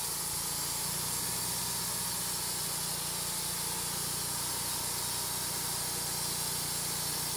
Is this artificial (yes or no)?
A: no